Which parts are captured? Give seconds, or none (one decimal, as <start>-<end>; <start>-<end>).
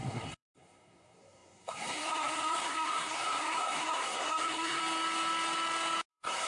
4.8-6.1